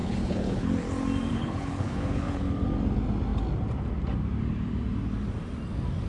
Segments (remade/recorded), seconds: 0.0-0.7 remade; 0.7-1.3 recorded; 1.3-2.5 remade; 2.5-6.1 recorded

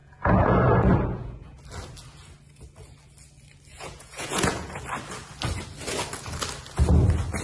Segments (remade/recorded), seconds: 0.0-1.6 remade; 1.6-3.7 recorded; 3.7-4.8 remade; 4.8-7.4 recorded

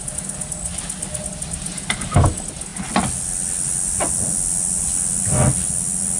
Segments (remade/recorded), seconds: 0.0-6.2 recorded